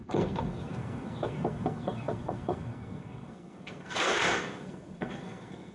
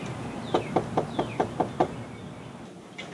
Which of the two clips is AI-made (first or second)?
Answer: first